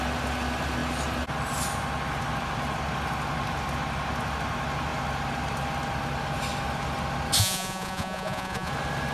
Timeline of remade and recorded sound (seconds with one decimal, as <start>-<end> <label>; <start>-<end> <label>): 0.0-7.4 recorded; 7.4-8.7 remade; 8.7-9.1 recorded